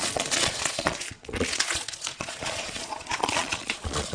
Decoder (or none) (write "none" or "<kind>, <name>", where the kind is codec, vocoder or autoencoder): vocoder, Vocos